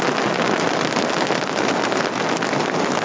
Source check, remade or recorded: recorded